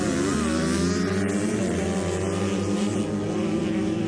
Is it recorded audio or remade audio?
recorded